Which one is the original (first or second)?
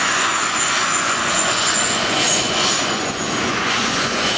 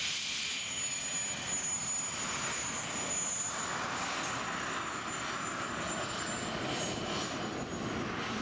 second